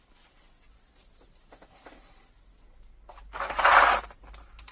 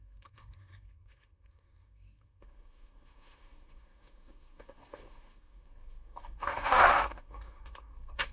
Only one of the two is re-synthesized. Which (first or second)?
second